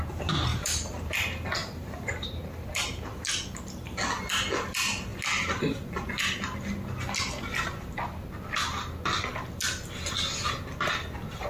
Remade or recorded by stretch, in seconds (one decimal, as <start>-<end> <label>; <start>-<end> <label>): 0.0-0.5 recorded; 0.5-1.1 remade; 1.1-1.6 recorded; 1.6-3.2 remade; 3.2-11.5 recorded